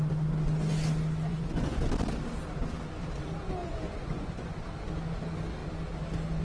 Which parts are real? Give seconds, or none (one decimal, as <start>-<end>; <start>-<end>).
0.0-1.3; 1.9-3.6; 4.5-6.4